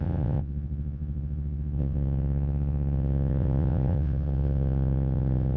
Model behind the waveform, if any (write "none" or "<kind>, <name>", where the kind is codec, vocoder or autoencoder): vocoder, WaveNeXt